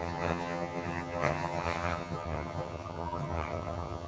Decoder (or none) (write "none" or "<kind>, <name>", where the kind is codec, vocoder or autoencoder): vocoder, HiFi-GAN